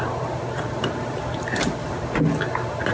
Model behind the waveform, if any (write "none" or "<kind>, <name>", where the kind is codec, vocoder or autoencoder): none